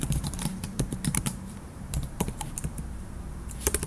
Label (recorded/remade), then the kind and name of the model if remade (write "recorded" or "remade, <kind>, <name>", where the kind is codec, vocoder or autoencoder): remade, vocoder, BigVGAN v2